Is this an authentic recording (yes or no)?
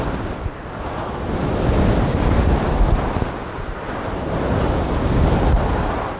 no